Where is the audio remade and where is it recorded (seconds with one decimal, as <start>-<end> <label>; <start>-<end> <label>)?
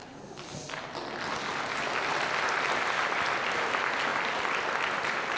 0.0-5.4 recorded